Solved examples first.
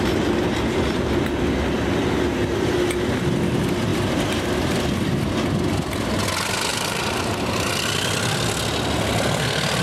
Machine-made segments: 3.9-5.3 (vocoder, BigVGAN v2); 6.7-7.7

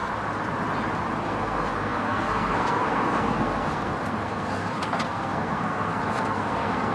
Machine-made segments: 1.2-6.9 (codec, SNAC)

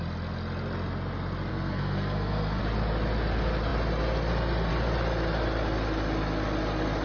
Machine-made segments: 1.5-2.6 (codec, SNAC)

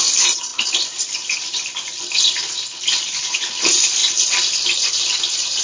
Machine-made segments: none

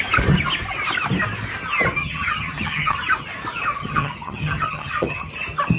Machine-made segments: 2.0-3.0 (vocoder, HiFi-GAN); 3.8-5.3